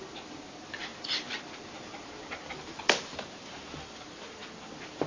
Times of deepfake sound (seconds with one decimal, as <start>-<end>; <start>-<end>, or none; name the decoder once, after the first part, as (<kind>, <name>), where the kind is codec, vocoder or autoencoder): none

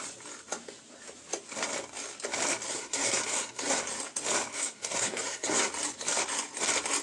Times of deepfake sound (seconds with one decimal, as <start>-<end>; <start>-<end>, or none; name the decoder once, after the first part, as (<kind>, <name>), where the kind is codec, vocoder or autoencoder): 2.7-3.8 (codec, SNAC); 4.5-5.7

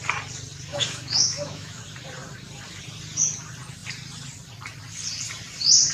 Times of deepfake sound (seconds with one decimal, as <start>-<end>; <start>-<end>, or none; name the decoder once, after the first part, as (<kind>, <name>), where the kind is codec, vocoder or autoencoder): 0.7-1.8 (autoencoder, DAC-VAE)

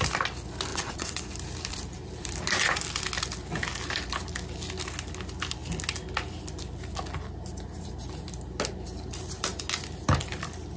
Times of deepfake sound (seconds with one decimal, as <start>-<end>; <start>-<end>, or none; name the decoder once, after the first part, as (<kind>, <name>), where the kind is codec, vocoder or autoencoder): 0.7-1.2 (vocoder, WaveNeXt)

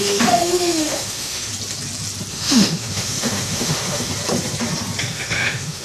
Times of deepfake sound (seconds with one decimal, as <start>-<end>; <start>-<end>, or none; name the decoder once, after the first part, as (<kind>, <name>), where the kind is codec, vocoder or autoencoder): 0.0-1.5 (autoencoder, DAC-VAE); 2.3-4.1; 5.0-5.8